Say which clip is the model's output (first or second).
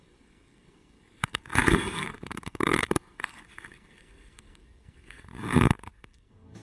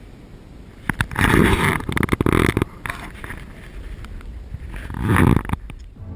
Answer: first